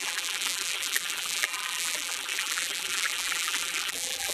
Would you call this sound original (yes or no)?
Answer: no